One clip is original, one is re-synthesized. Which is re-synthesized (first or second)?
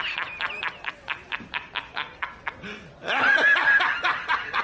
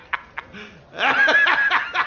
first